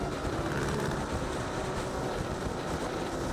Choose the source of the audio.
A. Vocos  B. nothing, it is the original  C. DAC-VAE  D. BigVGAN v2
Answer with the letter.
D